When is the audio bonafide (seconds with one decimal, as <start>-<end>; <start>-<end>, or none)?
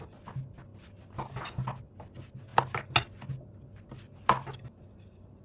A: 0.0-5.4